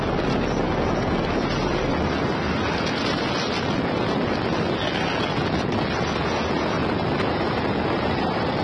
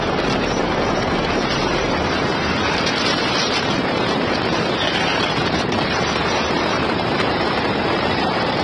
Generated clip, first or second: second